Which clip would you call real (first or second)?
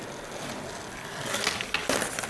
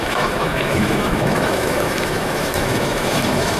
first